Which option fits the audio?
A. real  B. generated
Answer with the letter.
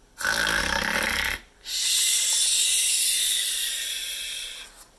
A